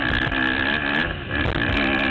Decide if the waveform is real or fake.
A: real